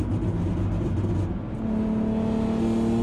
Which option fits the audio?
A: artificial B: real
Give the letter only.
B